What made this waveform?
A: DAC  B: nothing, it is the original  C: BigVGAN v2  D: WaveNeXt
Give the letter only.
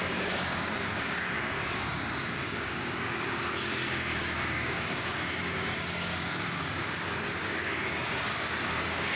A